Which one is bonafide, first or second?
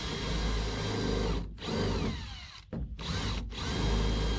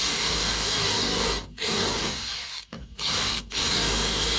first